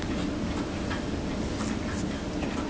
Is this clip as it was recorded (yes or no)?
yes